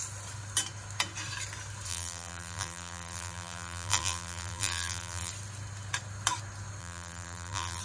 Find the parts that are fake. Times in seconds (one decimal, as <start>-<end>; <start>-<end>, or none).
1.9-5.3; 6.8-7.8